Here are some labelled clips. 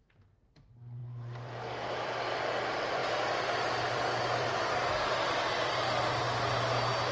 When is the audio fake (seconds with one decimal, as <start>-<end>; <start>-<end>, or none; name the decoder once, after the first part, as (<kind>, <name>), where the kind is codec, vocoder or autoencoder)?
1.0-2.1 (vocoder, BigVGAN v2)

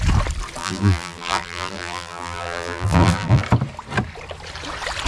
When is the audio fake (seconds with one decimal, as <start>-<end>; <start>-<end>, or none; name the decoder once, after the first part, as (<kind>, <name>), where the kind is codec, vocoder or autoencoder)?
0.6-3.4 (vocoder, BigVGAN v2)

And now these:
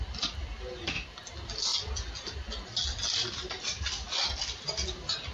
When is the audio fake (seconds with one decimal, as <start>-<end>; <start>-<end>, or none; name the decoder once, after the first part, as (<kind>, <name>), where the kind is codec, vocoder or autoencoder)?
none

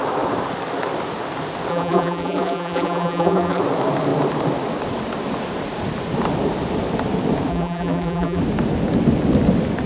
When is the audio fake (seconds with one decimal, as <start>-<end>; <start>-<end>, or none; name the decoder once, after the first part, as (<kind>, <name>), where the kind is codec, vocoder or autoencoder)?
1.7-3.6 (vocoder, BigVGAN v2); 7.5-8.4